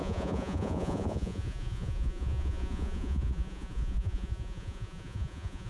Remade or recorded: remade